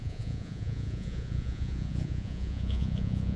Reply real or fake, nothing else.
fake